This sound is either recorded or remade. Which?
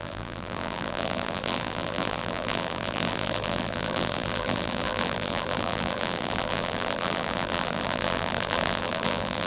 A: remade